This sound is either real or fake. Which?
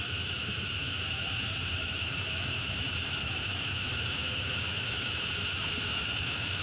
fake